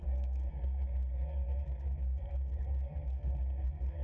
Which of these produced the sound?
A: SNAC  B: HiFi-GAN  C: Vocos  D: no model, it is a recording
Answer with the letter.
A